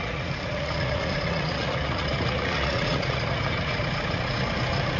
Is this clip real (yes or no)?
no